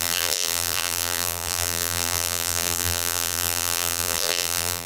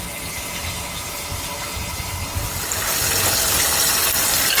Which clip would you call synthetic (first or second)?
first